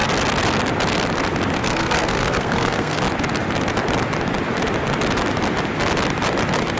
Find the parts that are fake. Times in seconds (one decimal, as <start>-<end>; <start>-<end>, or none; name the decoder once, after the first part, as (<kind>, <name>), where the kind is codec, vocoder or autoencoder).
1.6-3.0 (codec, SNAC)